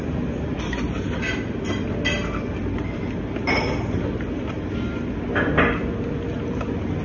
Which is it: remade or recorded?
recorded